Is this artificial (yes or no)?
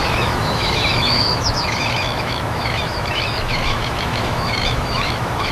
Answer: yes